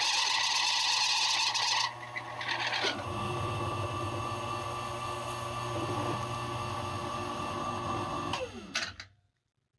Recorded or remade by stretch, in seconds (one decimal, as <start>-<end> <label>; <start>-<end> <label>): 0.0-9.8 recorded